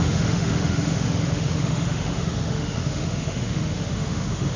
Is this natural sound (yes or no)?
no